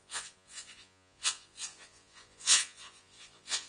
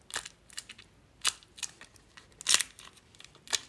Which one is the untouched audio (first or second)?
second